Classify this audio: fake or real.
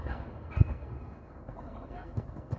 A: fake